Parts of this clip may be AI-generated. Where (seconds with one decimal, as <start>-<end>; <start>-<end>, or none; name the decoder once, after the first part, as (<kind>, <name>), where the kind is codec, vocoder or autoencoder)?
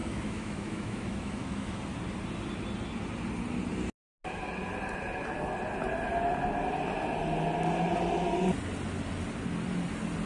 0.0-1.8 (autoencoder, DAC-VAE)